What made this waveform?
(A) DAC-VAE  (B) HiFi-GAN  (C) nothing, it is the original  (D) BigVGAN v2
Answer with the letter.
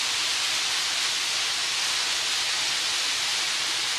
C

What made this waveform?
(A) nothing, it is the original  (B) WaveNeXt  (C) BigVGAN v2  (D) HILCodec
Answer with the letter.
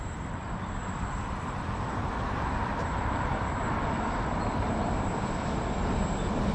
C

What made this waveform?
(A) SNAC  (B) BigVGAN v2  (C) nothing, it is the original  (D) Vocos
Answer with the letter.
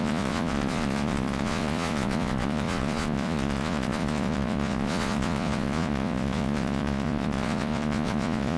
D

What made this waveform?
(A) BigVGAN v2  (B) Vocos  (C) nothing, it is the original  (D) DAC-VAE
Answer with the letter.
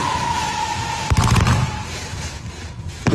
A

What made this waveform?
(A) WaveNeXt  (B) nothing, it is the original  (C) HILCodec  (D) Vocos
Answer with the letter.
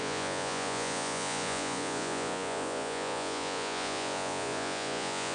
D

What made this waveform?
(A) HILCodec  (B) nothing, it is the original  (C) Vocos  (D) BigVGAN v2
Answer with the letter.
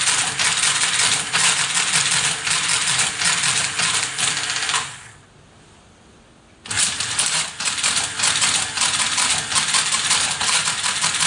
B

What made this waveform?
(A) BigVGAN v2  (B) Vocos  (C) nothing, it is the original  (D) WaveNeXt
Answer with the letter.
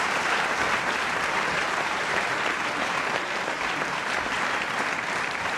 A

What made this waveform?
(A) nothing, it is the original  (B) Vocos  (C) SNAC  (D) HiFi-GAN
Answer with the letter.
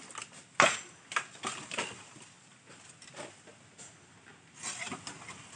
A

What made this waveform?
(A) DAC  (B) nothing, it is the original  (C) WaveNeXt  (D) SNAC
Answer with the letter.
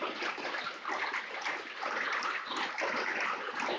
B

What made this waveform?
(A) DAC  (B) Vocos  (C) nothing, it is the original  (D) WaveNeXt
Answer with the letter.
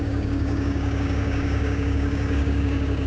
A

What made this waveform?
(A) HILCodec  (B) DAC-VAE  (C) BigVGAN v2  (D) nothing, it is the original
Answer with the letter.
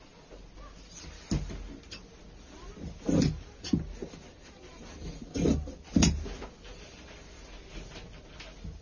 D